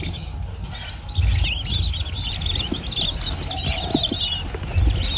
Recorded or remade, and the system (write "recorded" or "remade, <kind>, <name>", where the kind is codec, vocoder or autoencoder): recorded